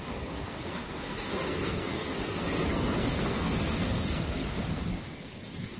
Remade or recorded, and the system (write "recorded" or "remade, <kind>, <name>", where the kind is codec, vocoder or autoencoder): remade, codec, SNAC